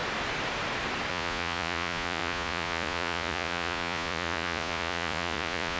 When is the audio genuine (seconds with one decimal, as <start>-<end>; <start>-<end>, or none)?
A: 0.0-1.1